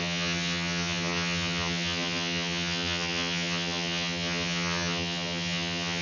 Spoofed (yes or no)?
yes